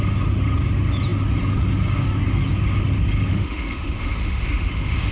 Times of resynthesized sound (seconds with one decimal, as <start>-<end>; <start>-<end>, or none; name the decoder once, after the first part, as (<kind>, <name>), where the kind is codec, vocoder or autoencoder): 3.3-5.1 (autoencoder, DAC-VAE)